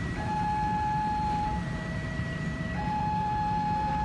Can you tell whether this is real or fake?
fake